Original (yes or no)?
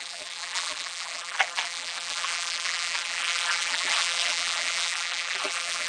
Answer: no